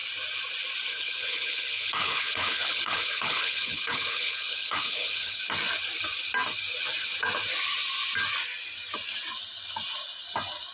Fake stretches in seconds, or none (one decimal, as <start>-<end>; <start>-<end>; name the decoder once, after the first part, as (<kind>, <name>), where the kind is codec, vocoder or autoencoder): 0.9-5.4 (codec, HILCodec)